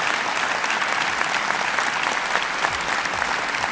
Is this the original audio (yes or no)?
yes